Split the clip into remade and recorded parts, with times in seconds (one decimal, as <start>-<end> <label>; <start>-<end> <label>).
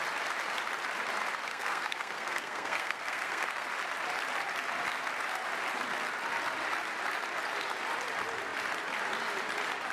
0.0-1.5 recorded; 1.5-3.7 remade; 3.7-9.9 recorded